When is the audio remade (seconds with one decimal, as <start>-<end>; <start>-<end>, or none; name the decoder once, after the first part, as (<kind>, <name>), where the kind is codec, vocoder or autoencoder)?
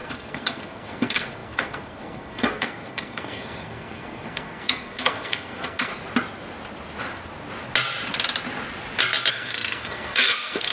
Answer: 0.0-5.9 (codec, SNAC); 9.3-10.7